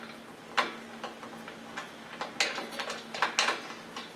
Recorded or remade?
recorded